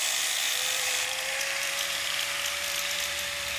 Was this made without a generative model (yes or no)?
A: no